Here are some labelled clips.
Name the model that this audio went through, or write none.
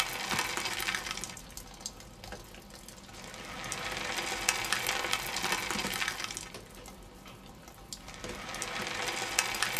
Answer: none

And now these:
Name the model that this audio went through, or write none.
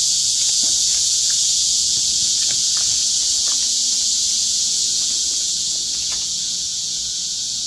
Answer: vocoder, Vocos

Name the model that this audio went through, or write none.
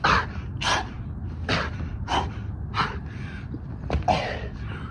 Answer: none